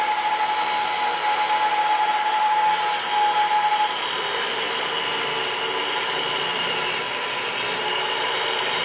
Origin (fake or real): real